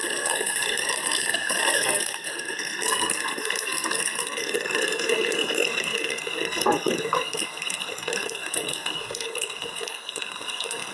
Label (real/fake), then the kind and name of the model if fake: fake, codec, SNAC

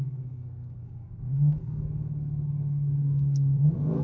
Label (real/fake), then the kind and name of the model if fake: fake, codec, SNAC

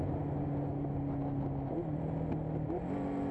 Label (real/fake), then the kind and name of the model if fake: real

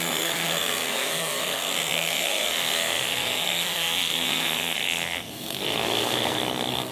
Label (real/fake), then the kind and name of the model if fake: fake, codec, SNAC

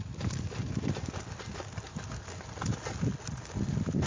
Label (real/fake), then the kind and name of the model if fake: real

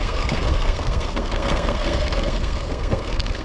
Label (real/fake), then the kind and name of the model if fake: fake, codec, SNAC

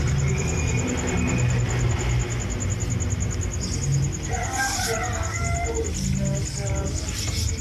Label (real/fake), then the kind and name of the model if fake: real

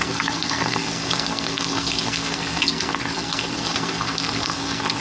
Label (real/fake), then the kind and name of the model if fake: fake, codec, SNAC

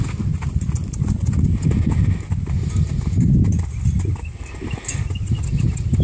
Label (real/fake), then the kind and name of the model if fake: real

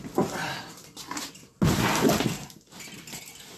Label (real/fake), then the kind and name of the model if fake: real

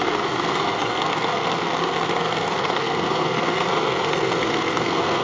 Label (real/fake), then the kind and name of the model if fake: fake, codec, SNAC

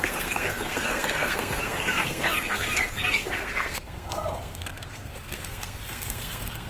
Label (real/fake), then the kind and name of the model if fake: fake, codec, SNAC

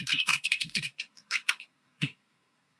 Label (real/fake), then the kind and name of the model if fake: fake, codec, SNAC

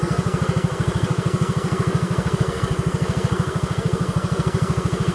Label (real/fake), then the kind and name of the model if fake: fake, codec, SNAC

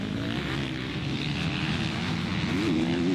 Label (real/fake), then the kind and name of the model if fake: real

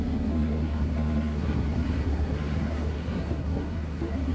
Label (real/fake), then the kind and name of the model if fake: fake, codec, SNAC